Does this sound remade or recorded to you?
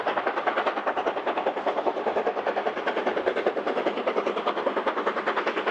recorded